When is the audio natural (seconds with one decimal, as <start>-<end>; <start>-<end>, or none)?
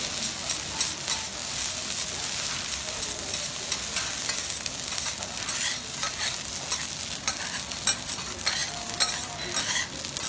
0.0-10.3